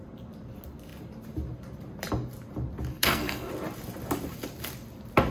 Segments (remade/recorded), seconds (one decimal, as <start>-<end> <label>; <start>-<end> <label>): 0.0-2.9 recorded; 2.9-3.5 remade; 3.5-5.3 recorded